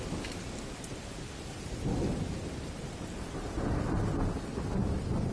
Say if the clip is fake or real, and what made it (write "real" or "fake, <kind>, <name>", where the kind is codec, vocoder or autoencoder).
real